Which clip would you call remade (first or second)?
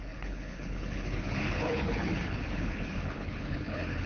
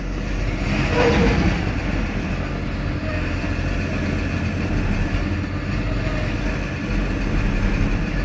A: first